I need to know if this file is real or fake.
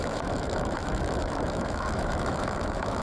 fake